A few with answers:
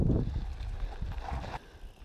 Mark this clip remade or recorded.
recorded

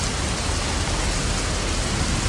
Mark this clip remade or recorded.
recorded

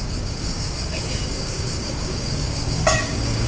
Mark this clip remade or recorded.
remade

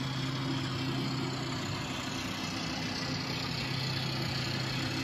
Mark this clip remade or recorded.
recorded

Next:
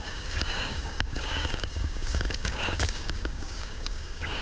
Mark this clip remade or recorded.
remade